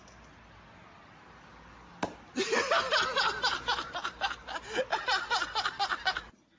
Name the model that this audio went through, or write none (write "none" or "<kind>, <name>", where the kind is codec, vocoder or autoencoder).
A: none